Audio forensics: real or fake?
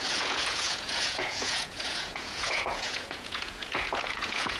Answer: fake